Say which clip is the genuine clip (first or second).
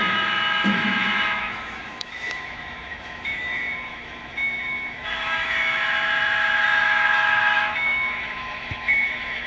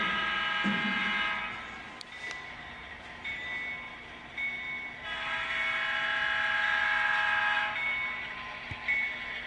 second